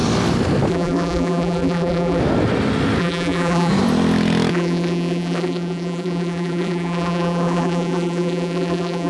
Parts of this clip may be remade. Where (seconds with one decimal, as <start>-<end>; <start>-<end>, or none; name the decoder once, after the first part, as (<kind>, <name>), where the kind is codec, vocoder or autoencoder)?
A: 0.7-2.2 (vocoder, BigVGAN v2); 3.0-3.7; 4.5-9.1